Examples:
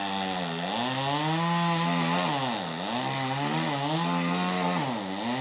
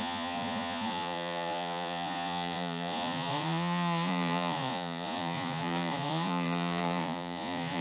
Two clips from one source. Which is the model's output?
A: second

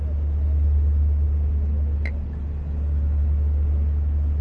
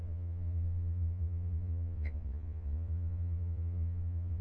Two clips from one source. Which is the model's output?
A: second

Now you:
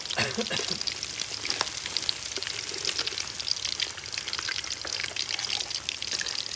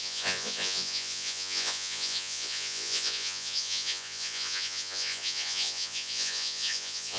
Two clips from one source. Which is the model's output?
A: second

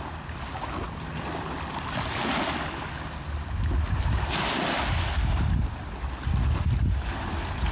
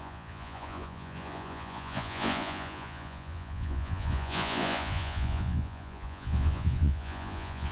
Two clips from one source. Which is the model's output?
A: second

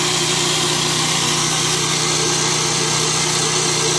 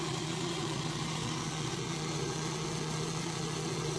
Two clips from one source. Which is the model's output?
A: second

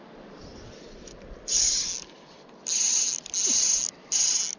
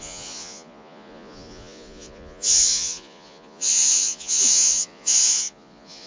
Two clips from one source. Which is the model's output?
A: second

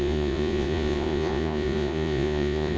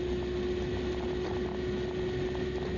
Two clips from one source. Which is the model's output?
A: first